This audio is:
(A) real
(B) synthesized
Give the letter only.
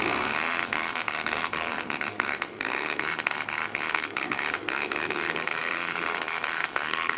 B